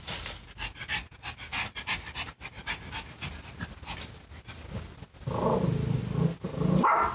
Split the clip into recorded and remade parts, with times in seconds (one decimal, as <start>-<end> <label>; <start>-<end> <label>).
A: 0.0-7.1 recorded